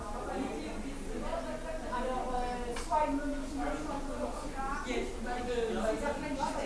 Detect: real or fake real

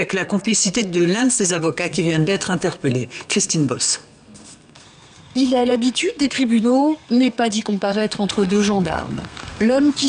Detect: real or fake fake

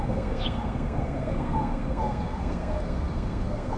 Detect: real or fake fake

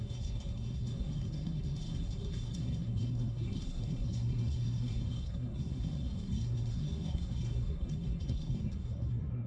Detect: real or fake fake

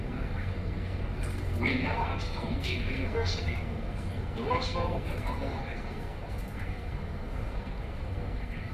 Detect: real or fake fake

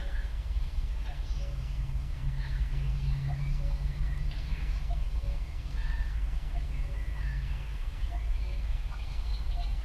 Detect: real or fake fake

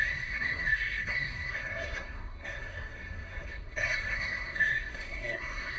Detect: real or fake fake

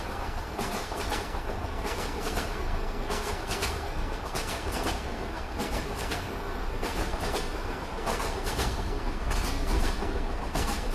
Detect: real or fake fake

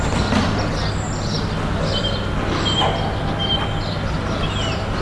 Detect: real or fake real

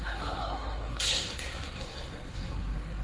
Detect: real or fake fake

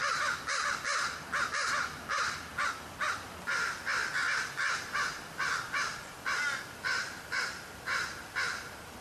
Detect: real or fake real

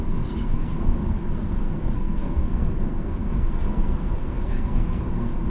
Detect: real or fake fake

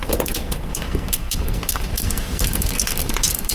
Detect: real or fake fake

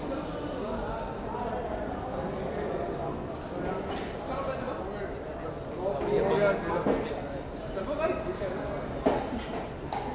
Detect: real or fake real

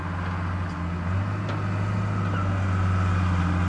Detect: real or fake real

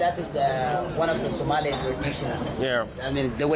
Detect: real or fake real